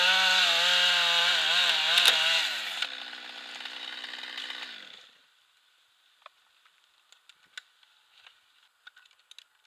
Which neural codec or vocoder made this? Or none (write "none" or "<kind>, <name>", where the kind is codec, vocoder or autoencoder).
none